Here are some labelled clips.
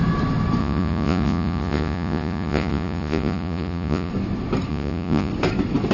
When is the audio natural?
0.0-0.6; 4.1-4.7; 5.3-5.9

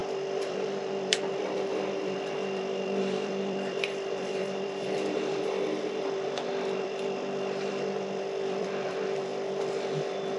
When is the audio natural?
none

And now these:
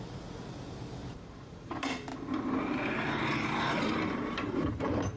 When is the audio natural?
2.1-3.8

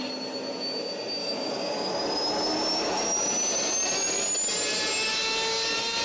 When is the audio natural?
0.0-1.2; 1.9-6.0

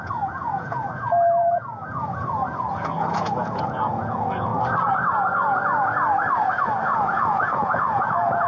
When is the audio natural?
4.5-6.8